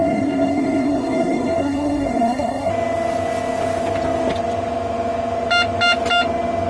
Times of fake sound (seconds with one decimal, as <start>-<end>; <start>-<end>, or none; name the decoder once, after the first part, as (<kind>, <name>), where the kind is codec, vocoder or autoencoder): 0.0-2.7 (codec, SNAC)